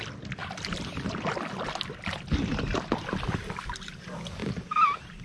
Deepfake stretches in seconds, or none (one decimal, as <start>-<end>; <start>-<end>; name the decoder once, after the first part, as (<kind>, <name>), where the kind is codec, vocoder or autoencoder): none